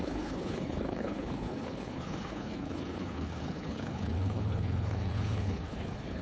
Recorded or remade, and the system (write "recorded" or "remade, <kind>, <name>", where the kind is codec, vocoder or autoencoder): remade, codec, HILCodec